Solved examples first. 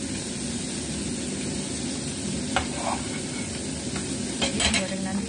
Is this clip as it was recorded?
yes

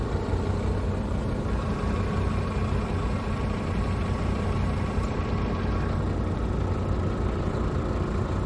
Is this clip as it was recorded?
yes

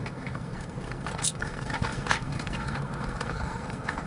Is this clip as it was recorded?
no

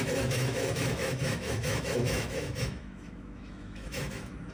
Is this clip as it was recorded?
no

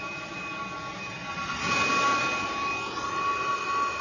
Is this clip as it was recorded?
yes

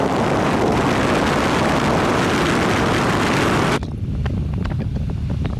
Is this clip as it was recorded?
yes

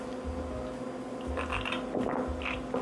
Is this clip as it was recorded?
yes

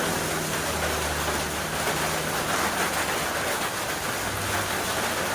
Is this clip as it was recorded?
yes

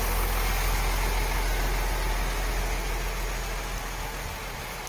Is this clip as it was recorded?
yes